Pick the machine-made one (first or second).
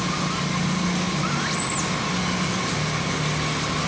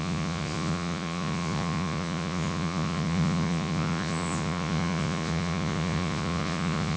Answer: second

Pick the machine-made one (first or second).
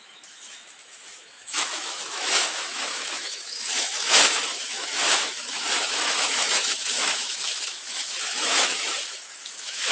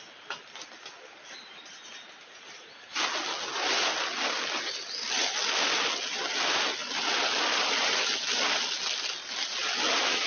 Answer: first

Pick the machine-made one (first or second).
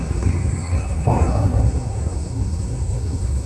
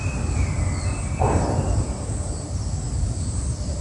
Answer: first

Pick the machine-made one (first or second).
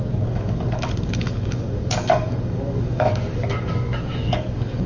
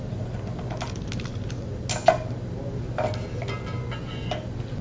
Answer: first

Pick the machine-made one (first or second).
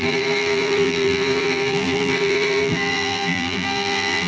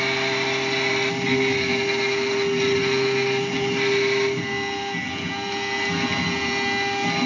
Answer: first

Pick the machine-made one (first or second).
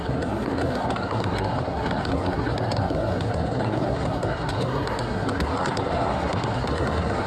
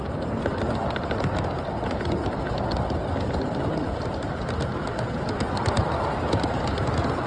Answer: first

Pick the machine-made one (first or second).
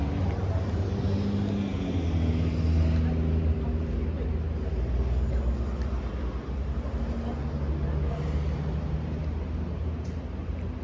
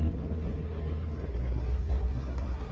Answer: second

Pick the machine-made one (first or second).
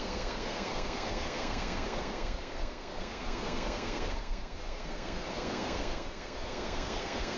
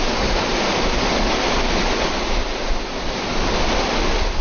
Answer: first